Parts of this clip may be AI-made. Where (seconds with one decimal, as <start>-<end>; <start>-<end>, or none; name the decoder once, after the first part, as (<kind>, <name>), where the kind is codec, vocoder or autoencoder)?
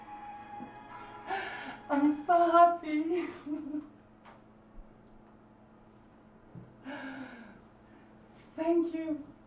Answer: 0.0-0.4 (vocoder, BigVGAN v2); 2.3-2.9; 5.8-6.5; 8.3-9.5